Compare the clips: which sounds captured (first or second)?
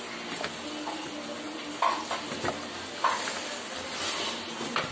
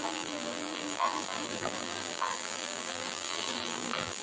first